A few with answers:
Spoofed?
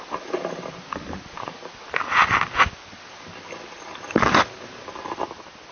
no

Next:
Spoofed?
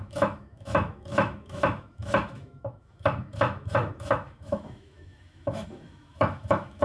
yes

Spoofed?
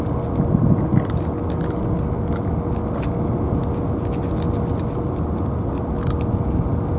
no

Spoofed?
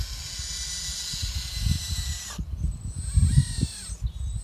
no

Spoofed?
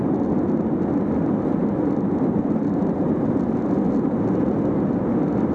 no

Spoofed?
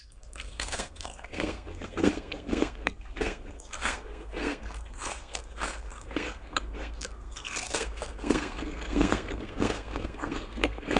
yes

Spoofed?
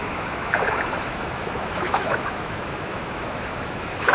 yes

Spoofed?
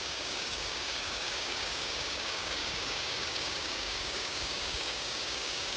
yes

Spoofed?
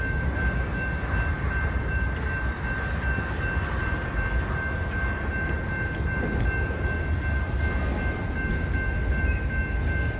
no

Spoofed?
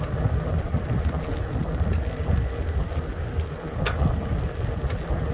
no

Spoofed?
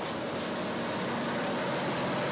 no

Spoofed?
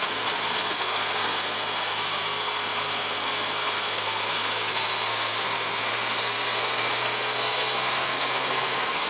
yes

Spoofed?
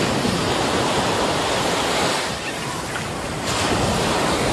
no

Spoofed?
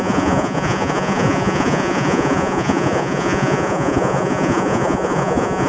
yes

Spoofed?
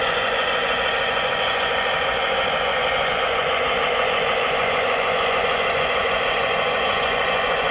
yes